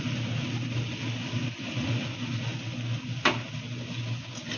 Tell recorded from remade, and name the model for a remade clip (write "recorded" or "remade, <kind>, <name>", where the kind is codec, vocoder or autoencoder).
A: recorded